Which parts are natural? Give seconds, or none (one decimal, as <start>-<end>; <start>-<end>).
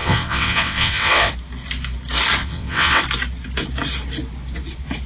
1.3-2.4; 3.0-5.1